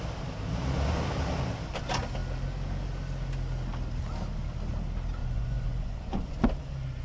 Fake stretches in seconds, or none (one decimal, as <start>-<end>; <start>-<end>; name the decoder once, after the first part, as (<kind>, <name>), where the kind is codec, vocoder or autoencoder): 5.2-6.4 (vocoder, Vocos)